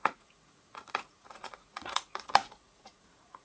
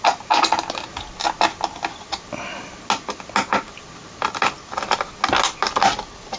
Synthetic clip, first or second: first